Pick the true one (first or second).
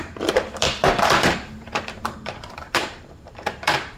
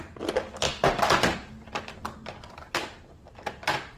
second